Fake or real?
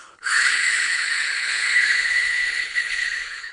fake